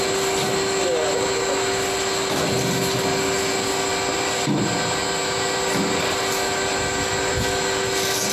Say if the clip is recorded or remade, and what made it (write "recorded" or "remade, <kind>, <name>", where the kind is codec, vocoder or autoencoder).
recorded